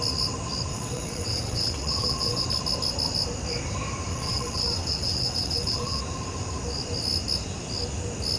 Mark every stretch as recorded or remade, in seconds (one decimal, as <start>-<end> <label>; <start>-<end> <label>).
0.0-0.7 recorded; 0.7-2.4 remade; 2.4-4.1 recorded; 4.1-6.0 remade; 6.0-8.4 recorded